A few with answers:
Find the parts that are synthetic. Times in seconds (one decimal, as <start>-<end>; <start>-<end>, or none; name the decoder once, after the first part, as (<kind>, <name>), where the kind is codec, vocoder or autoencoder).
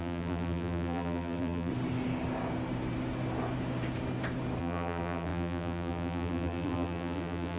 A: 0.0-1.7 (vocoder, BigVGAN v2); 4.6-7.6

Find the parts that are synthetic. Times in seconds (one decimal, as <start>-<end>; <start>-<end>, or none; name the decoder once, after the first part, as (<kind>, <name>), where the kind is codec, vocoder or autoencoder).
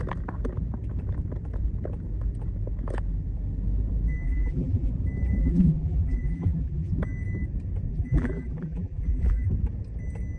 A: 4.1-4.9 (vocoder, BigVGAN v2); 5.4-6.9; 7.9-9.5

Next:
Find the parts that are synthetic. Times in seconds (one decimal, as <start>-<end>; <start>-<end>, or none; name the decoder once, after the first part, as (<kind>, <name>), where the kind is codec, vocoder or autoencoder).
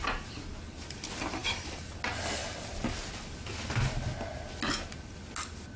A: 1.4-2.0 (vocoder, BigVGAN v2)